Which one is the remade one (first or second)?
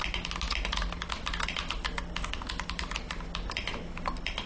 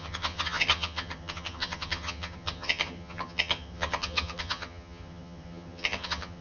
second